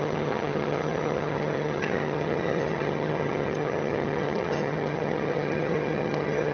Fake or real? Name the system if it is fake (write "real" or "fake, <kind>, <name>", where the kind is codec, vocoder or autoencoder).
fake, vocoder, HiFi-GAN